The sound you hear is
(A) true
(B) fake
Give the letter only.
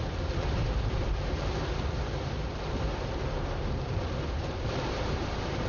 B